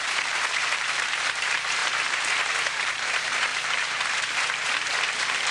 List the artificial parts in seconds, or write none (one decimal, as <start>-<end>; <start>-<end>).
0.0-5.5